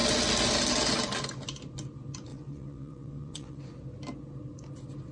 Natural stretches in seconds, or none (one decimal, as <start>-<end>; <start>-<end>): 0.0-2.3; 3.6-5.1